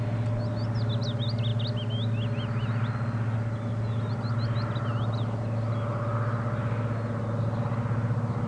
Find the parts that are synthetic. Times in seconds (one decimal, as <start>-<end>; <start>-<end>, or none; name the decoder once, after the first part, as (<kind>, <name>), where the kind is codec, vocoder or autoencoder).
none

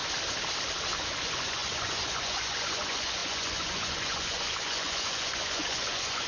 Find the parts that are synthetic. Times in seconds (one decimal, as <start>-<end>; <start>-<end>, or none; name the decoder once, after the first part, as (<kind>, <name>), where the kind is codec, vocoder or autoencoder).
1.0-6.3 (vocoder, Vocos)

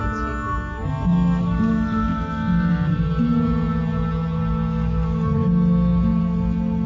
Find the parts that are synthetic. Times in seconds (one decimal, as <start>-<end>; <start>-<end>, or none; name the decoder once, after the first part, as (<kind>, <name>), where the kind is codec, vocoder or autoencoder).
none

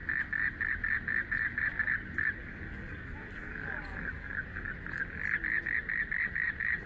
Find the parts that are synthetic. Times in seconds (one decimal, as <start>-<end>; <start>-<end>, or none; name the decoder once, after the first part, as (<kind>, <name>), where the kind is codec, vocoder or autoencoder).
2.4-4.7 (codec, DAC)